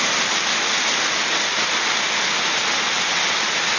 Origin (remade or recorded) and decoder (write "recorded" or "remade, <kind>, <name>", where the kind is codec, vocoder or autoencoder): recorded